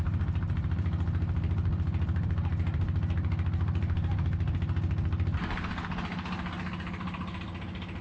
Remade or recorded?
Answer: recorded